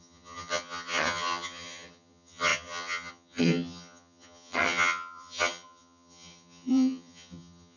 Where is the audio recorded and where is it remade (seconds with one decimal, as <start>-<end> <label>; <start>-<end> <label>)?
0.0-7.8 remade